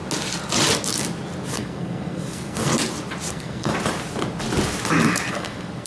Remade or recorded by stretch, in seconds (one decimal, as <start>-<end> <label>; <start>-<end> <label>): 0.0-1.5 recorded; 1.5-2.7 remade; 2.7-3.3 recorded; 3.3-3.7 remade; 3.7-5.3 recorded; 5.3-5.9 remade